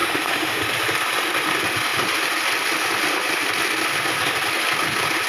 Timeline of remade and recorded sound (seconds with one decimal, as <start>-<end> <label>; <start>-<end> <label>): 0.0-0.6 remade; 0.6-5.3 recorded